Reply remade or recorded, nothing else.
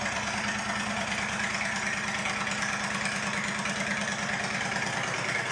recorded